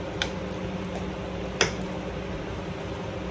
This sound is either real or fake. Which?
real